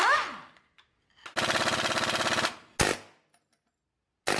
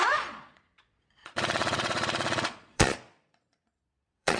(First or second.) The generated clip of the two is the second